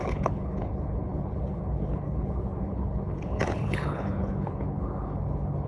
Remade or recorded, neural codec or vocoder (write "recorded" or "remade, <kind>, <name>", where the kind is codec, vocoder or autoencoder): remade, codec, HILCodec